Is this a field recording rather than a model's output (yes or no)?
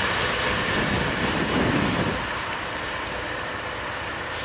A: yes